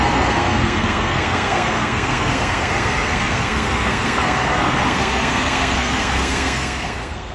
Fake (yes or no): yes